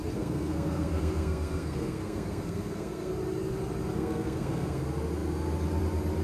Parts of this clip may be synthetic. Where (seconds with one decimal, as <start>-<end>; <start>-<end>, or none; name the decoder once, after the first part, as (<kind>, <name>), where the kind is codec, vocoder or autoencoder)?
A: 0.0-3.1 (codec, SNAC); 4.0-4.8